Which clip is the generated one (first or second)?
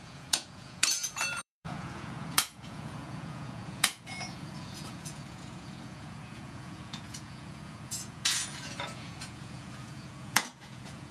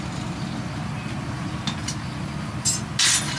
first